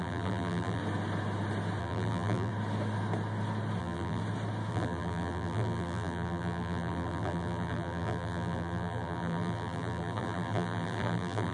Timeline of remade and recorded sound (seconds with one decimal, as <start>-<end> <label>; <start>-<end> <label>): 0.0-0.8 remade; 0.8-1.8 recorded; 1.8-2.5 remade; 2.5-3.8 recorded; 3.8-4.2 remade; 4.2-4.7 recorded; 4.7-11.5 remade